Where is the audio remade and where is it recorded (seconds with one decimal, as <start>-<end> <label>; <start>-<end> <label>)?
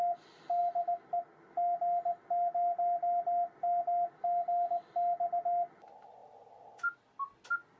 0.0-7.8 recorded